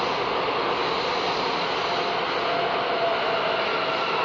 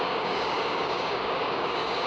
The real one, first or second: first